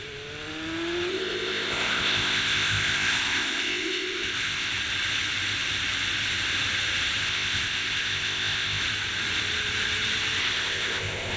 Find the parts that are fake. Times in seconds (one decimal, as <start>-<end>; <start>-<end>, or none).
1.1-4.7; 7.2-8.8; 10.4-11.4